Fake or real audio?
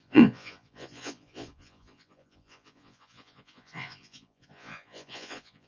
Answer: fake